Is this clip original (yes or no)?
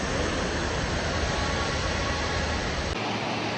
yes